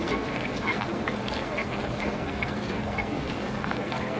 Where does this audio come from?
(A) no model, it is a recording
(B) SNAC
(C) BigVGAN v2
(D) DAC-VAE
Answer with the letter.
B